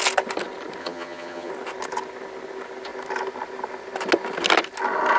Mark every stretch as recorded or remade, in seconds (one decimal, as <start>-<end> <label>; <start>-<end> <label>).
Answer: 0.0-0.8 recorded; 0.8-1.5 remade; 1.5-5.2 recorded